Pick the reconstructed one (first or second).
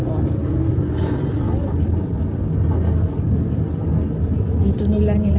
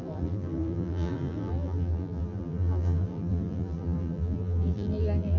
second